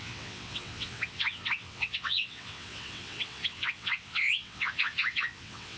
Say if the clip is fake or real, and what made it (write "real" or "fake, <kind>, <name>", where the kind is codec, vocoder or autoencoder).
fake, vocoder, WaveNeXt